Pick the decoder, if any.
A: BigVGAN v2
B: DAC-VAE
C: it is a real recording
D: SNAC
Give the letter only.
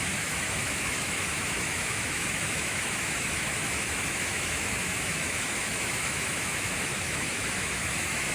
B